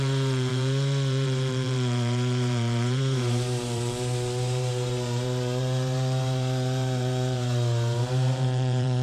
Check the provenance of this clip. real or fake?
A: fake